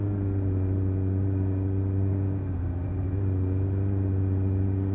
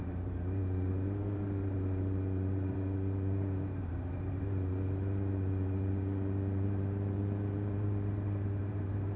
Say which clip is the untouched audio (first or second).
first